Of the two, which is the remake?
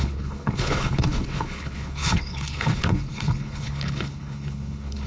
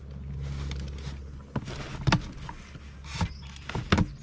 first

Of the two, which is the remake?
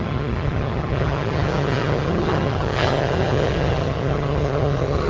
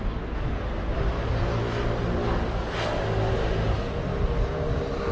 first